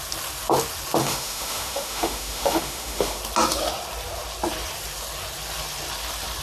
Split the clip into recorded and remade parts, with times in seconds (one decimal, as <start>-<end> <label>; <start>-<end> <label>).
0.0-1.0 recorded; 1.0-3.2 remade; 3.2-6.4 recorded